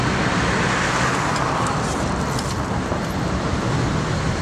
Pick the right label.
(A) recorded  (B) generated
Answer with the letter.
A